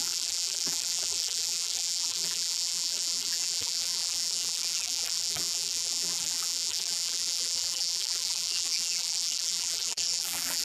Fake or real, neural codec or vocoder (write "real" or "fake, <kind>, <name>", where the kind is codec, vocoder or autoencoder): fake, vocoder, BigVGAN v2